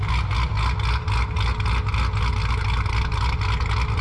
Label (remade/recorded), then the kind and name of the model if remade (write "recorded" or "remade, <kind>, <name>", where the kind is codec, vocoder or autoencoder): recorded